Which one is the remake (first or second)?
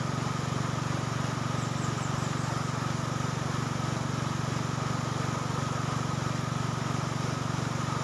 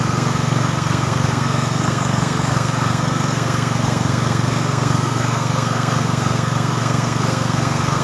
second